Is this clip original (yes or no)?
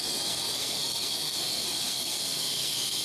no